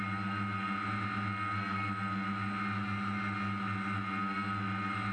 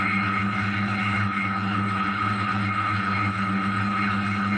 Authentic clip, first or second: first